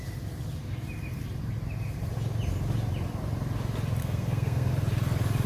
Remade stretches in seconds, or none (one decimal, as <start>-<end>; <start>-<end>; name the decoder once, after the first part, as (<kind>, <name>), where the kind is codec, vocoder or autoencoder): 4.0-4.7 (codec, SNAC)